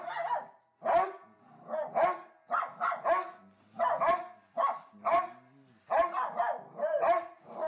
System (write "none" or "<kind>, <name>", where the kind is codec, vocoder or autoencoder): none